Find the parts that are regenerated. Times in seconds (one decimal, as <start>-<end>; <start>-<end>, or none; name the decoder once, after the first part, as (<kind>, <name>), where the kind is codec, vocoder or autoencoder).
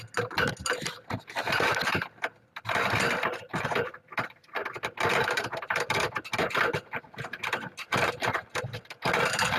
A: none